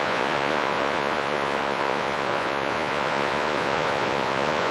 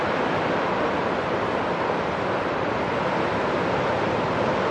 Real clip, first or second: second